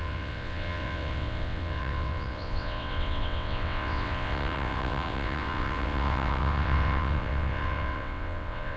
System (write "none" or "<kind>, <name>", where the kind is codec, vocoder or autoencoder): vocoder, WaveNeXt